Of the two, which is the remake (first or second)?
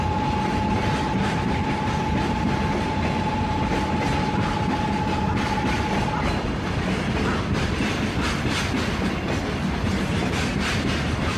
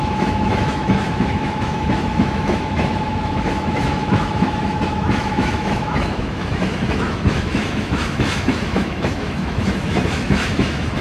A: second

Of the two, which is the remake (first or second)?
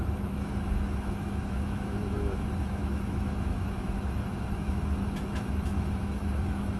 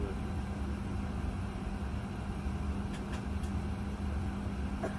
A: first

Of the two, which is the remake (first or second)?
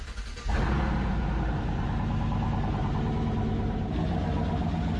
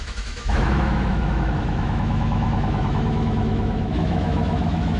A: second